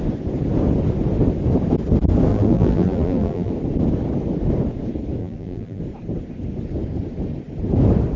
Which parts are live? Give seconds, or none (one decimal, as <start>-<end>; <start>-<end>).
0.0-2.3; 3.5-5.2; 5.8-8.2